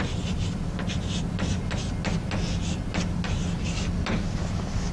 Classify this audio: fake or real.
real